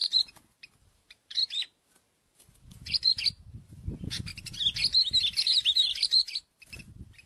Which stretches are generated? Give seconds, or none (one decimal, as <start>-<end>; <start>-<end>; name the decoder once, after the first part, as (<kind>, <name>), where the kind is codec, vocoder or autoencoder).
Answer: 0.0-1.4 (vocoder, BigVGAN v2); 2.4-4.3; 5.4-7.3